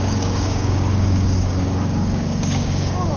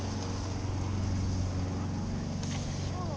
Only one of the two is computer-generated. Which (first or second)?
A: first